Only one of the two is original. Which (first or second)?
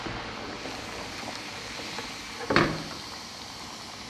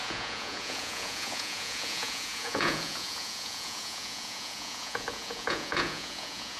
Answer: first